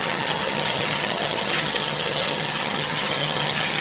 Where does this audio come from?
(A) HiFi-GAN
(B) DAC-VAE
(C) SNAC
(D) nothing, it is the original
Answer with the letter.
A